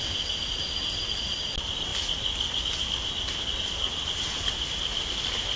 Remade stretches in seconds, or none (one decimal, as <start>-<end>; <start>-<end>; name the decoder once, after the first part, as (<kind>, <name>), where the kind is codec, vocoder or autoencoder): none